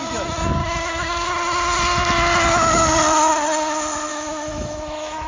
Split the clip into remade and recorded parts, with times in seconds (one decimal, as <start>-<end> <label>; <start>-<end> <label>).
0.0-0.6 recorded; 0.6-1.3 remade; 1.3-4.1 recorded; 4.1-5.3 remade